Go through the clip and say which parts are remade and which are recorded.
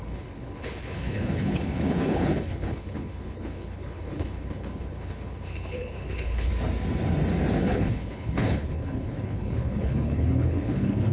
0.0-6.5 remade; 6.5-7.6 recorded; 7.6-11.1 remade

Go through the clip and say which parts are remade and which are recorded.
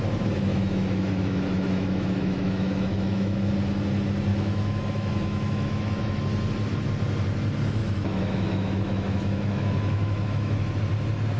0.0-0.5 recorded; 0.5-3.5 remade; 3.5-4.3 recorded; 4.3-6.2 remade; 6.2-7.8 recorded; 7.8-10.7 remade; 10.7-11.4 recorded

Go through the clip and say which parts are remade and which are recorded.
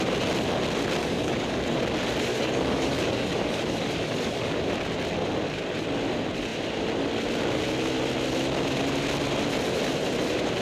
0.0-1.0 recorded; 1.0-1.8 remade; 1.8-2.3 recorded; 2.3-4.7 remade; 4.7-10.6 recorded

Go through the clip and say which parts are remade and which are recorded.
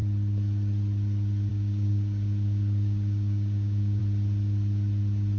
0.0-1.5 recorded; 1.5-4.0 remade; 4.0-5.4 recorded